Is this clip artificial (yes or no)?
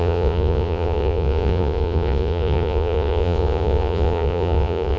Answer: yes